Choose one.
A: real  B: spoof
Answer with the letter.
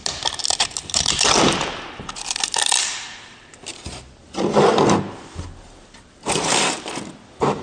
A